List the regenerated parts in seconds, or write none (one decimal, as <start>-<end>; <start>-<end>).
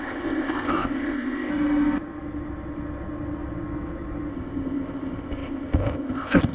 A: 0.0-1.5; 4.3-6.5